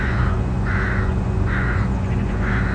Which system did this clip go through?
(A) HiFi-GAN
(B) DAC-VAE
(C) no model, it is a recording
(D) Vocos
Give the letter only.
D